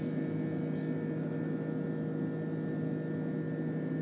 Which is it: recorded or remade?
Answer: recorded